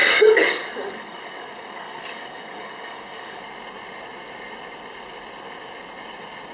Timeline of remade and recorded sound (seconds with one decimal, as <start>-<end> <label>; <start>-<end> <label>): 0.0-3.4 remade; 3.4-6.5 recorded